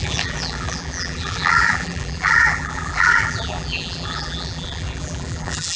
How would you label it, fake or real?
fake